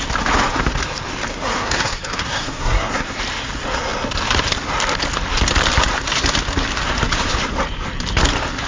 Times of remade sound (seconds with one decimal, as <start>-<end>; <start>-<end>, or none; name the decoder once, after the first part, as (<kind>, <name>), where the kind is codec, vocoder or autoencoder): 1.3-3.2 (codec, SNAC)